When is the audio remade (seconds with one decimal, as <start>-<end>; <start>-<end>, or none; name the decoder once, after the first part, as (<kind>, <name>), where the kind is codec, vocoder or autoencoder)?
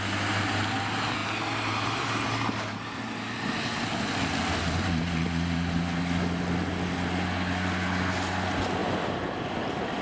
none